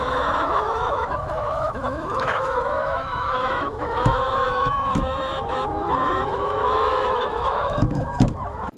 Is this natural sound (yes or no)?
no